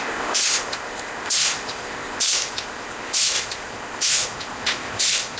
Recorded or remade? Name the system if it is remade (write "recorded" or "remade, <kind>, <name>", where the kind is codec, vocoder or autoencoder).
remade, codec, ZipCodec